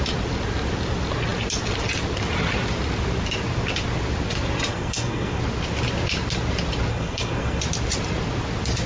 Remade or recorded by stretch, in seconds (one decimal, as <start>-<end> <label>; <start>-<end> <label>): 0.0-4.7 recorded; 4.7-5.4 remade; 5.4-6.9 recorded; 6.9-7.6 remade; 7.6-8.9 recorded